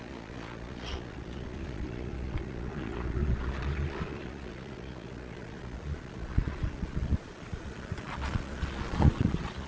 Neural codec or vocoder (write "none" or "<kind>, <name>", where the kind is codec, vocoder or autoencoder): vocoder, Vocos